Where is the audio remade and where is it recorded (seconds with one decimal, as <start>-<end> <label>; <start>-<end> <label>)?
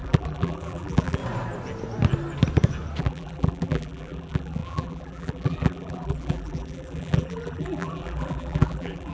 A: 0.0-1.2 remade; 1.2-3.0 recorded; 3.0-9.1 remade